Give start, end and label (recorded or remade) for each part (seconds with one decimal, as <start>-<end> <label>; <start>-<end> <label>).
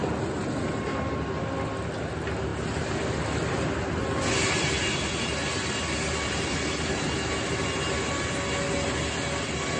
0.0-9.8 recorded